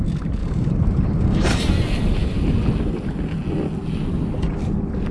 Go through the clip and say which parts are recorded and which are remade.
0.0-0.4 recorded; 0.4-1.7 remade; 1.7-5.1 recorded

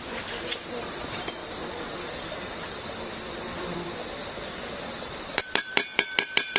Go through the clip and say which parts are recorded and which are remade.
0.0-6.6 remade

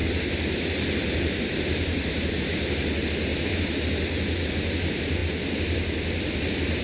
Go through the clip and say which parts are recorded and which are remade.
0.0-2.8 remade; 2.8-3.3 recorded; 3.3-3.9 remade; 3.9-6.8 recorded

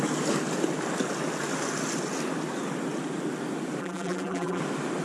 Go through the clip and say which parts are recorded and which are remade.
0.0-3.8 recorded; 3.8-4.6 remade; 4.6-5.0 recorded

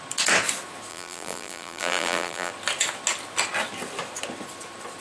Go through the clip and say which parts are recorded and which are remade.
0.0-0.9 recorded; 0.9-2.5 remade; 2.5-5.0 recorded